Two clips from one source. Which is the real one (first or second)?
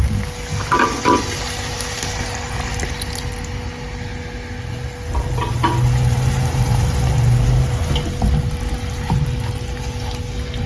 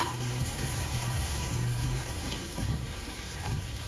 first